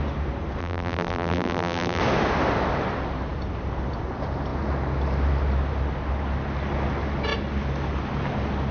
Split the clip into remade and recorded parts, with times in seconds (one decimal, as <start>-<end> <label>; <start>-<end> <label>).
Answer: 0.0-0.6 recorded; 0.6-2.0 remade; 2.0-8.7 recorded